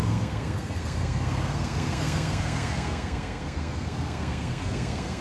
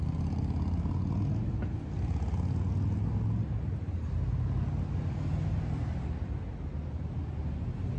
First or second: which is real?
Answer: second